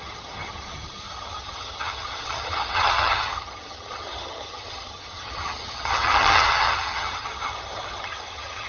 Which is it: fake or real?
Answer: fake